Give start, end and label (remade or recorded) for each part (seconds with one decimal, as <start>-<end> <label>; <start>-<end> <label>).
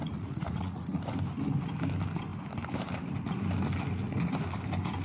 0.0-1.0 remade; 1.0-5.0 recorded